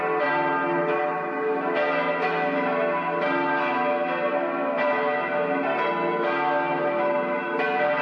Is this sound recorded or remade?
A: recorded